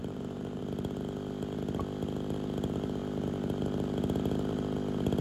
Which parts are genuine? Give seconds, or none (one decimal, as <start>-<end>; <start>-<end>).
0.6-5.2